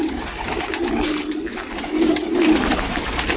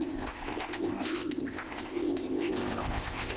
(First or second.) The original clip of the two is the first